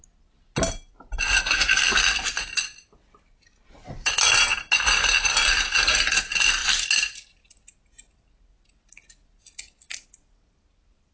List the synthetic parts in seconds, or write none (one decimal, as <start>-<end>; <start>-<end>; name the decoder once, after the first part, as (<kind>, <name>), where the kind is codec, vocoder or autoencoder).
none